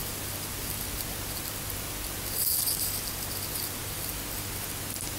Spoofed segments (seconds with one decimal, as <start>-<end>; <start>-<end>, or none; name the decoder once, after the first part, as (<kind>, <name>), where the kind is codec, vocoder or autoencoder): none

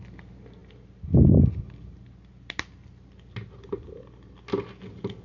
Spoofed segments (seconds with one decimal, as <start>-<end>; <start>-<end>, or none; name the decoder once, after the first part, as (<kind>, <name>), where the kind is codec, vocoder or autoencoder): none